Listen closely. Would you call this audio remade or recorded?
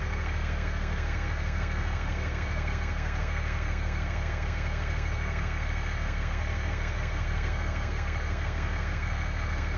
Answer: remade